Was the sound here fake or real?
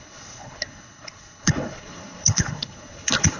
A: fake